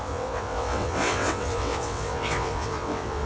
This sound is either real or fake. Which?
fake